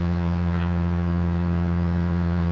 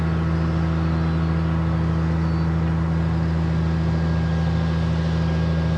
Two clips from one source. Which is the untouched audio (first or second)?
second